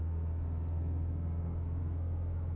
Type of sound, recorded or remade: remade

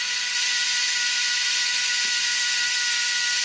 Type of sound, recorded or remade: recorded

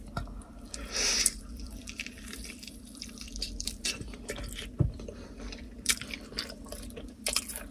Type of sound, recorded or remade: remade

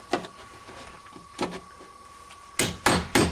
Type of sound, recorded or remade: recorded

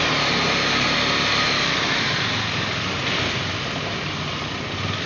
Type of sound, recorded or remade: recorded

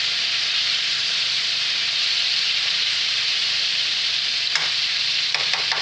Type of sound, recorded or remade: remade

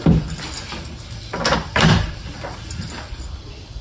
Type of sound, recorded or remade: remade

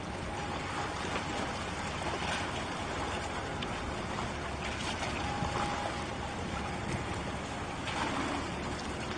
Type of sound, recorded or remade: recorded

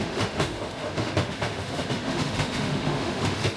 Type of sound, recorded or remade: remade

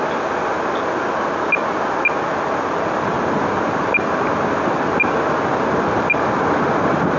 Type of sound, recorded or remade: recorded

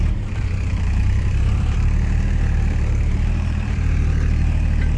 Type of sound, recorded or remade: remade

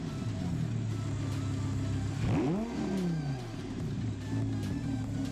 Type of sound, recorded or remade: recorded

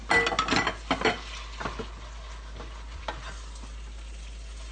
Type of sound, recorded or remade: recorded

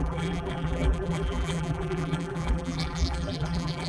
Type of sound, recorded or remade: remade